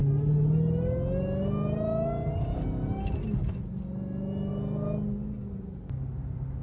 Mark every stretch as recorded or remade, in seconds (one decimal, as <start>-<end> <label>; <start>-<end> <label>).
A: 0.0-6.6 recorded